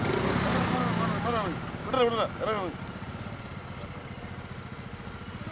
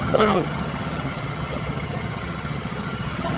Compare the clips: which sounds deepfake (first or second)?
second